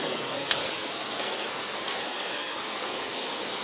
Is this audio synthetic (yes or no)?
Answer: yes